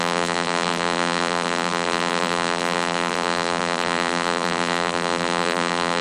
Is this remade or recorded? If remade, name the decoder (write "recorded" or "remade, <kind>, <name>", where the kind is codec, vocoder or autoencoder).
remade, vocoder, BigVGAN v2